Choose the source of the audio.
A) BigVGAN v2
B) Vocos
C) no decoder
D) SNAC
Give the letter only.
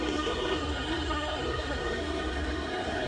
D